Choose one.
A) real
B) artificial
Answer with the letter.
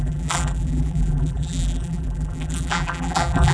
B